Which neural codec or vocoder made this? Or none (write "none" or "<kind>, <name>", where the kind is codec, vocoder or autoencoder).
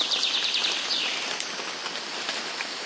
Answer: none